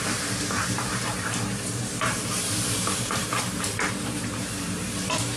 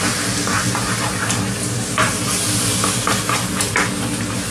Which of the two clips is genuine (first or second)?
second